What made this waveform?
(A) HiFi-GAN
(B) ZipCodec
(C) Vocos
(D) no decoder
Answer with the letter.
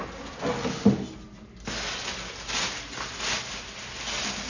D